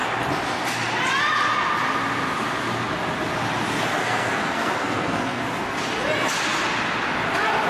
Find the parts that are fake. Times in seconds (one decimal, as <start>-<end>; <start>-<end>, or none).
4.0-5.4